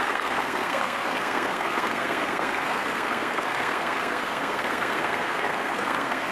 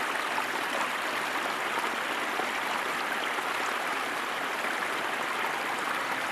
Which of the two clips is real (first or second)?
second